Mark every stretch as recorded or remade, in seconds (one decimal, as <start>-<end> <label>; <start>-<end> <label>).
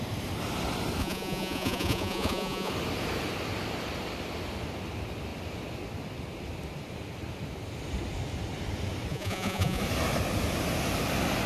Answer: 0.0-1.0 recorded; 1.0-2.7 remade; 2.7-9.1 recorded; 9.1-9.8 remade; 9.8-11.5 recorded